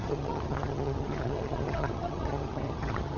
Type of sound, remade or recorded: remade